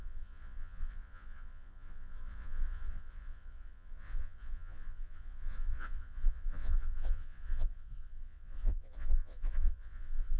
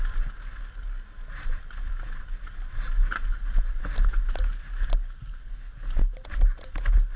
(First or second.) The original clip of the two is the second